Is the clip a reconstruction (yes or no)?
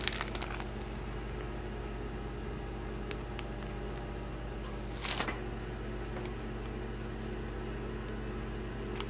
no